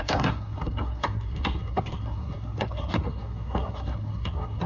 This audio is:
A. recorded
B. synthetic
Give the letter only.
B